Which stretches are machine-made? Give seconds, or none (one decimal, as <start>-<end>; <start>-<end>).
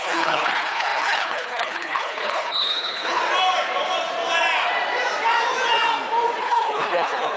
0.0-3.2; 6.4-7.4